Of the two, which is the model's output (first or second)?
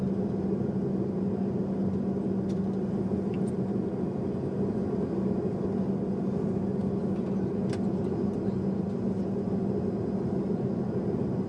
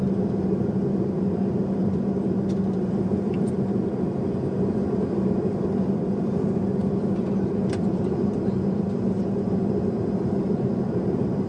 second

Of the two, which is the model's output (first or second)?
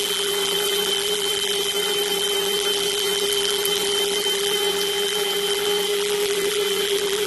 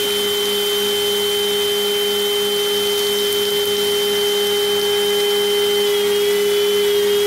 first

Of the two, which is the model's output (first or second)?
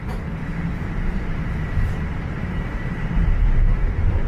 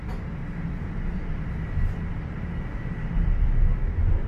first